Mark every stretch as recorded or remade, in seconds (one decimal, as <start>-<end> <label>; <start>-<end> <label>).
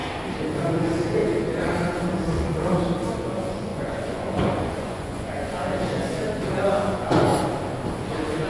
0.0-0.7 recorded; 0.7-7.3 remade; 7.3-8.0 recorded; 8.0-8.5 remade